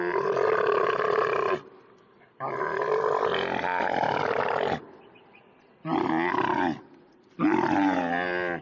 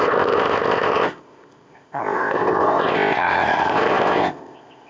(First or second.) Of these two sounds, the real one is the first